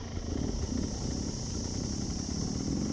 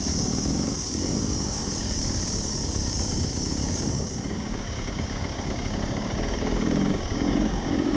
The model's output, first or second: second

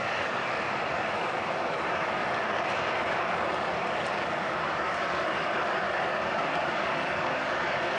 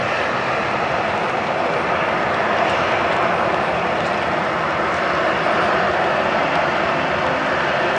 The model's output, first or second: first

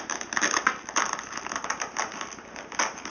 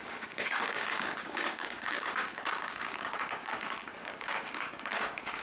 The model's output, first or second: second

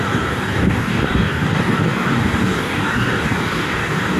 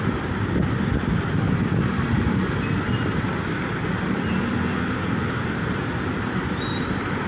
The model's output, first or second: first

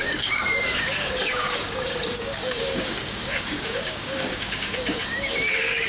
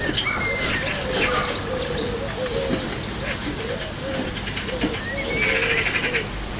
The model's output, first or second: first